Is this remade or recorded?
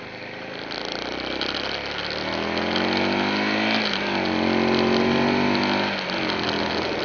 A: recorded